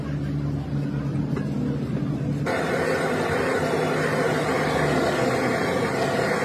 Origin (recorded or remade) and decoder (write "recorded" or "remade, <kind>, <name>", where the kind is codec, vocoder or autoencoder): recorded